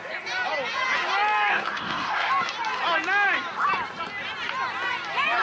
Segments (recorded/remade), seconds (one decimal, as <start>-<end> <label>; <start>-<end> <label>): 0.0-1.5 recorded; 1.5-2.3 remade; 2.3-5.4 recorded